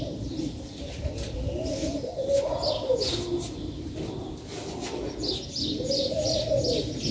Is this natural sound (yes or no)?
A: yes